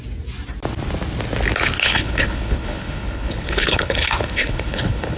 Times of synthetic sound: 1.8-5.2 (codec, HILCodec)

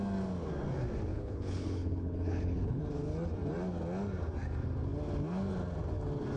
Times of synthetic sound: 1.1-2.8 (codec, HILCodec)

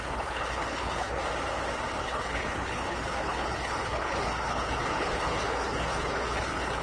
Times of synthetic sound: 0.0-1.2 (codec, HILCodec); 2.0-6.8

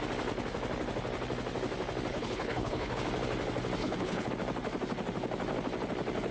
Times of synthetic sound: 2.1-3.0 (codec, HILCodec); 3.8-4.3

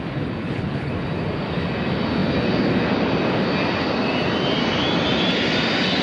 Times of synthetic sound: 0.4-0.9 (codec, HILCodec)